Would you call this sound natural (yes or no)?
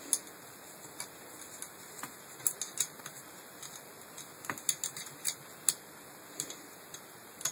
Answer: yes